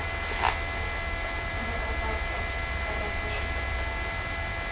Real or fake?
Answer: real